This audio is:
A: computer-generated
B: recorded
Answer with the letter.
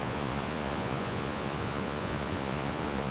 A